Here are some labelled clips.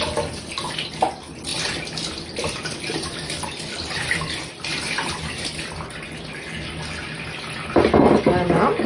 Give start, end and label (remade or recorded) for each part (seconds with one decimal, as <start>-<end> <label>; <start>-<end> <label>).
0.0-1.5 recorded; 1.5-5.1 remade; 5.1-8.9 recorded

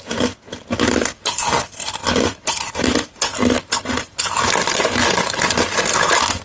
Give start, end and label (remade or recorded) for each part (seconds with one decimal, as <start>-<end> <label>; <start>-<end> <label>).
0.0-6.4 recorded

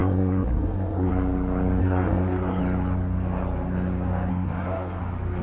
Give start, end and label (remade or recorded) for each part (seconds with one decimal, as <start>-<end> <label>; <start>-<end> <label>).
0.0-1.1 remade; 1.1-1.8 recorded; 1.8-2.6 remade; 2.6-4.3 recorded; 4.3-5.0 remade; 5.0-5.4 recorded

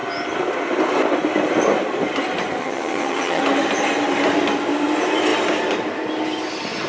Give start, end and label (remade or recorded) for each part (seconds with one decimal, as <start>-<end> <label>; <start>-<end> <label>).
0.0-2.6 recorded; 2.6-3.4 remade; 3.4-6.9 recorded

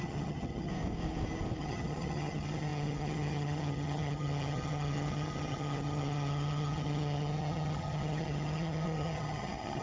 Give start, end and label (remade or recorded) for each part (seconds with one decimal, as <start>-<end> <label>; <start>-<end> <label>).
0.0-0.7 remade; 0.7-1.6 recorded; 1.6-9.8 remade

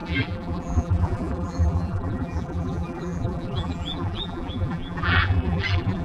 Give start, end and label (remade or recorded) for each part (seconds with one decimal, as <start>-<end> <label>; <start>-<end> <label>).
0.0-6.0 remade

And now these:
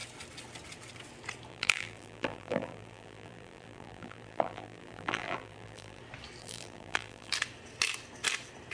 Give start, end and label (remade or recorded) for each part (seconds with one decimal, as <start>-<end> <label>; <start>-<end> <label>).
0.0-1.5 recorded; 1.5-6.0 remade; 6.0-6.4 recorded; 6.4-7.3 remade; 7.3-8.7 recorded

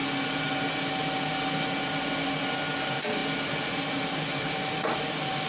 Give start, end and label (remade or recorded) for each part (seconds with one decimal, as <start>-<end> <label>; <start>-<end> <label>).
0.0-5.5 recorded